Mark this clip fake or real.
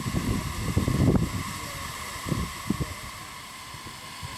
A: real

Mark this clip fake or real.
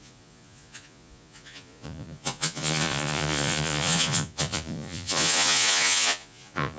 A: fake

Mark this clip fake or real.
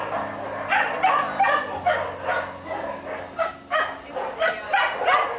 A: real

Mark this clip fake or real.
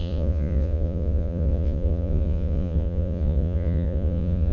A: fake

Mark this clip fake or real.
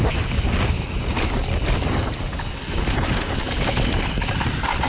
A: real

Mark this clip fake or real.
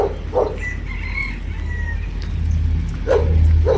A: real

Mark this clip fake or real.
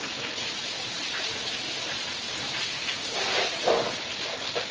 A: real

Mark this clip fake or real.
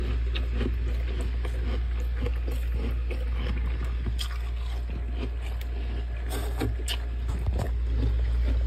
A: real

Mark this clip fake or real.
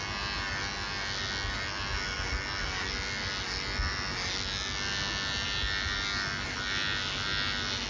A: real